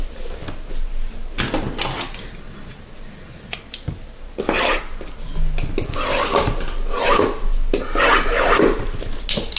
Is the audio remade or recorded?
recorded